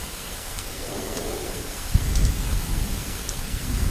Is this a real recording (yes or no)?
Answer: no